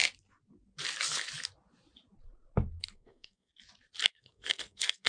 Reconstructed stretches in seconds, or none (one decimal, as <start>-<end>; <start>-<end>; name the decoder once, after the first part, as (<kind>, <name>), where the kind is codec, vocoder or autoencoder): 2.8-3.5 (codec, SNAC); 4.1-5.1

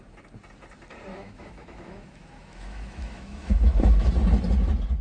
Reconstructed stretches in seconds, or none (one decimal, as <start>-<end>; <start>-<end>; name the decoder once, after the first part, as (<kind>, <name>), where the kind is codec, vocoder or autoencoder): 1.1-4.1 (autoencoder, DAC-VAE)